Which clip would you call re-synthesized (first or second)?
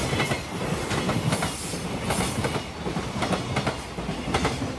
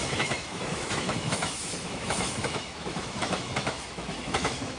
second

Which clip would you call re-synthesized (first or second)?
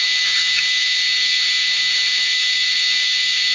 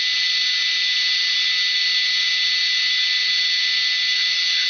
first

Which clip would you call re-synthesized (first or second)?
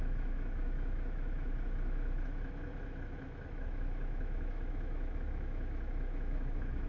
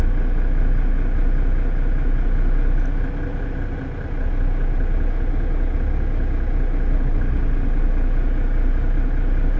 first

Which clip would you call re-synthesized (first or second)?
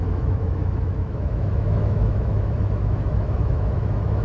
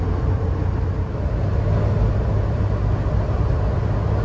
first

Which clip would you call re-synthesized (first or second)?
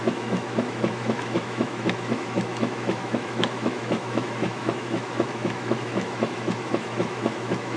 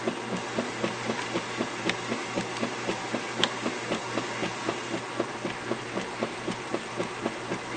first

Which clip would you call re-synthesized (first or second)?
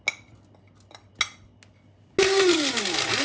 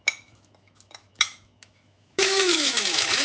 second